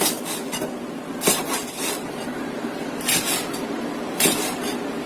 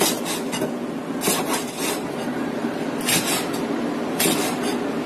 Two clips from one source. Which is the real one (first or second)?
second